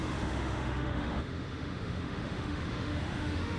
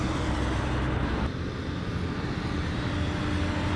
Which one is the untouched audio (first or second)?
second